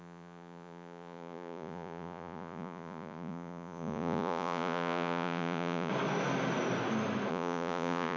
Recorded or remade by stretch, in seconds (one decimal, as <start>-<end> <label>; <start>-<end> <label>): 0.0-5.9 remade; 5.9-7.3 recorded; 7.3-8.2 remade